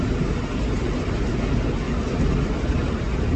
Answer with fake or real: real